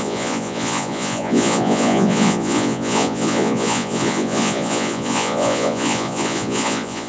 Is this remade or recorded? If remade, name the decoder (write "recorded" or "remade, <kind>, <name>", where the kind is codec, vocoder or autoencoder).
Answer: remade, vocoder, Vocos